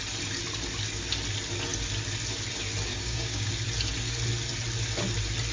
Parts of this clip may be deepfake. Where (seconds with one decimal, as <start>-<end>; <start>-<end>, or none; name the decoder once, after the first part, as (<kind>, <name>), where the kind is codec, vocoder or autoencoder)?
2.9-3.5 (codec, DAC)